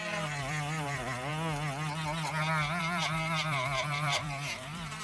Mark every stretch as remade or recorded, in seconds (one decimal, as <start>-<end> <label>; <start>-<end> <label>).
0.0-1.3 remade; 1.3-2.8 recorded; 2.8-5.0 remade